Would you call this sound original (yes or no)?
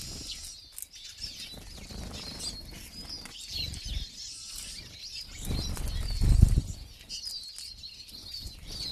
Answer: yes